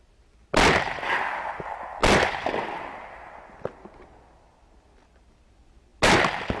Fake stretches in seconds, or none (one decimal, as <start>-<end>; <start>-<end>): none